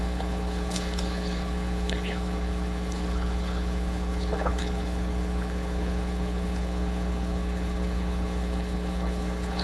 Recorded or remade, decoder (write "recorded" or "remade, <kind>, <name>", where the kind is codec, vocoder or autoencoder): remade, codec, HILCodec